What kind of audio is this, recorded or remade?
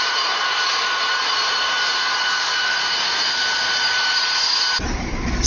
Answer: remade